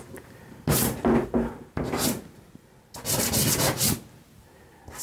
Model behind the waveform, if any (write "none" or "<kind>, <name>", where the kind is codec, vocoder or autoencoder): none